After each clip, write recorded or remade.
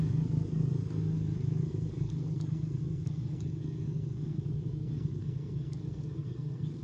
remade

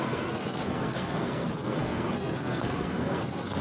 remade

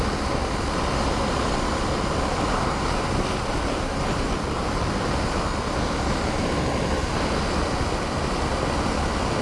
recorded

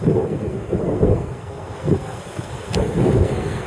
remade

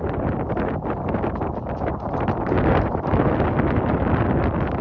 recorded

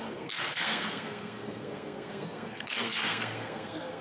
remade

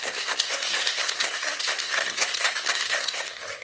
remade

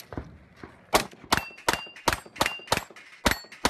recorded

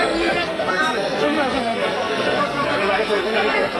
remade